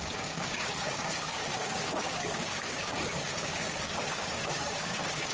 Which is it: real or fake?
fake